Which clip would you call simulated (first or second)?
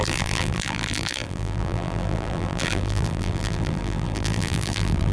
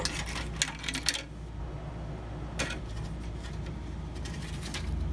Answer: first